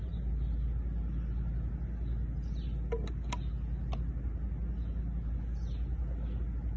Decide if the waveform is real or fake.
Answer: real